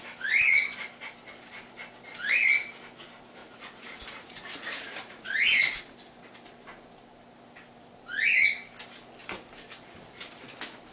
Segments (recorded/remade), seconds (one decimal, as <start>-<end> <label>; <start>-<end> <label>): 0.0-3.4 recorded; 3.4-5.8 remade; 5.8-10.9 recorded